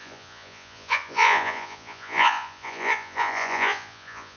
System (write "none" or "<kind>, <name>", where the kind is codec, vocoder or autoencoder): vocoder, Vocos